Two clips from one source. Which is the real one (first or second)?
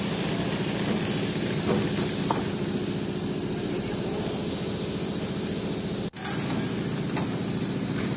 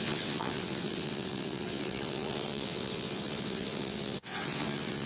first